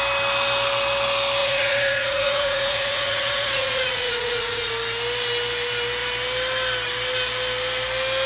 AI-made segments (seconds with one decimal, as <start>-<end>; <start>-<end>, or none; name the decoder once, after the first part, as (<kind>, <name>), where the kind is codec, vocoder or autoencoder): 1.4-4.7 (vocoder, Vocos)